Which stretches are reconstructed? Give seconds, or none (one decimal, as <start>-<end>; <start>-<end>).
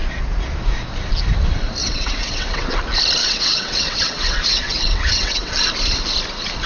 1.8-2.7; 3.2-5.5